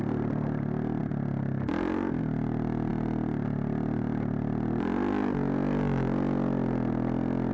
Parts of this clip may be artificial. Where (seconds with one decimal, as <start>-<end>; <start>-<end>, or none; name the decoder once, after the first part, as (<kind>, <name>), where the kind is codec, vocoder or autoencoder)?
none